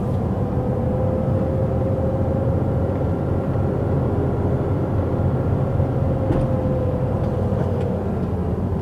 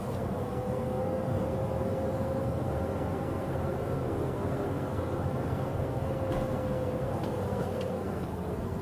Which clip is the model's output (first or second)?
second